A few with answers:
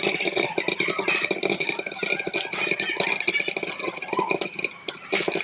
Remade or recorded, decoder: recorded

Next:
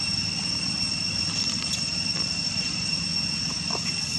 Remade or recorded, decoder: recorded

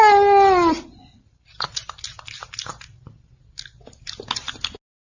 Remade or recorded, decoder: recorded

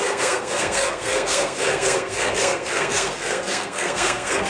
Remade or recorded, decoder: remade, codec, SNAC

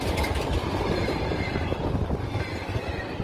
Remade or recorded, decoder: recorded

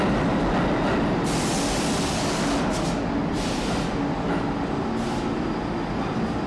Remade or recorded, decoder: recorded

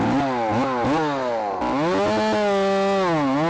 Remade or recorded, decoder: recorded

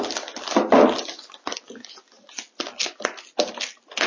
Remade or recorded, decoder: recorded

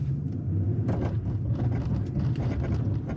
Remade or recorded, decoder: remade, vocoder, BigVGAN v2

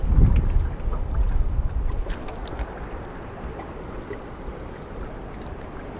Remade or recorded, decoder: remade, vocoder, BigVGAN v2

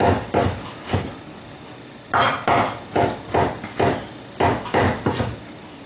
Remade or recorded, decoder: recorded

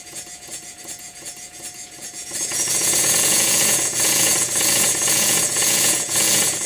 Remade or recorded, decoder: remade, vocoder, Vocos